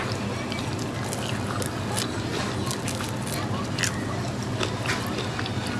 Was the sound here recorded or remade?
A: recorded